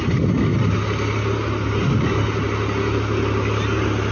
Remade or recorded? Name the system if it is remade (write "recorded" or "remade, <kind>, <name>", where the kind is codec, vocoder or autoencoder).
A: recorded